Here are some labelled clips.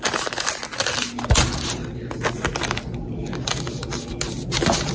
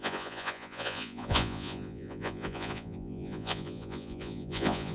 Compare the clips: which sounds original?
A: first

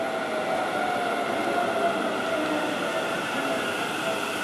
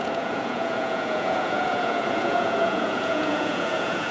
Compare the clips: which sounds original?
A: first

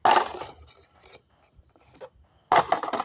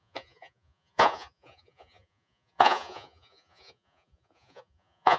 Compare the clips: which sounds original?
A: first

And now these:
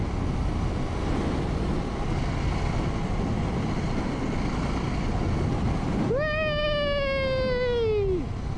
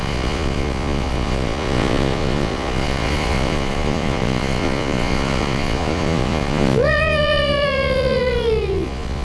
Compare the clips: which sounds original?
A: first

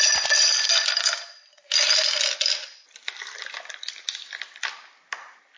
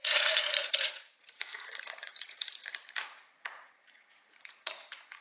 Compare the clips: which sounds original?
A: first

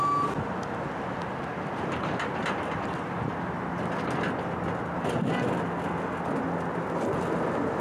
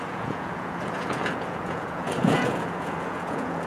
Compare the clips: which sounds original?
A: first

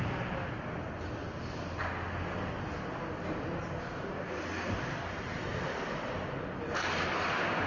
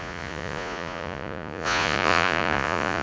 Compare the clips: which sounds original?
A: first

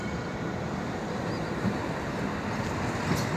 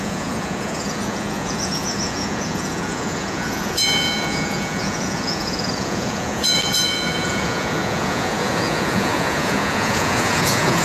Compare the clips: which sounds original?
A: first